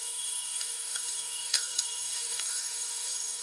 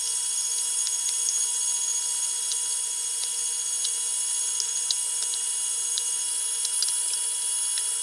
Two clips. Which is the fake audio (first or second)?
first